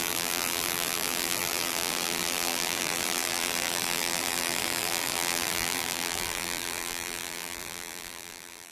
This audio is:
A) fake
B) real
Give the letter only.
A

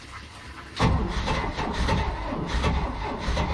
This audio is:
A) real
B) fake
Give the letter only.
A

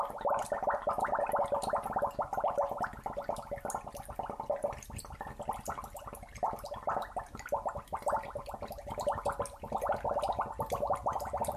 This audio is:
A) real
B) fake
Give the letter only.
A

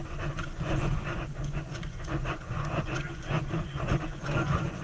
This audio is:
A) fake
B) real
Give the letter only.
A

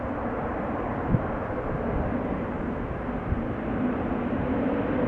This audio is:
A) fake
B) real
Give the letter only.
B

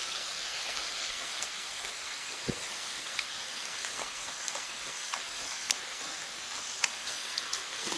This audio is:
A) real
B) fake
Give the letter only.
B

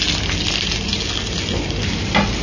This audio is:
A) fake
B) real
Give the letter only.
B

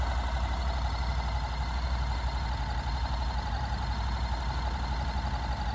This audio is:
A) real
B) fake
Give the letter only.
A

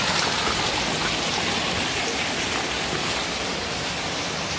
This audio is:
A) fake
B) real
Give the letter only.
B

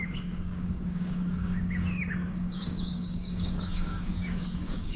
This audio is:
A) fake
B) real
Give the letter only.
A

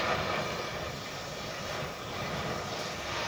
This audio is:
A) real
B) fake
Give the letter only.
A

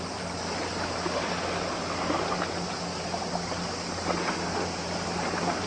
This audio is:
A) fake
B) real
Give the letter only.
B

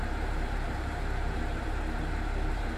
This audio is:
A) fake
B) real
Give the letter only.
A